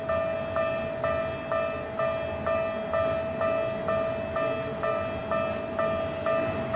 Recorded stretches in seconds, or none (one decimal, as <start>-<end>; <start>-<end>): 0.0-6.8

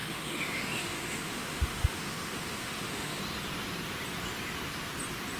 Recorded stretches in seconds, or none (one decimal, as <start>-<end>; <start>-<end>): 3.2-5.4

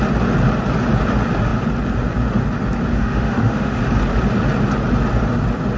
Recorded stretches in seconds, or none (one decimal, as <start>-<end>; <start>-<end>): 0.0-2.9; 3.8-5.8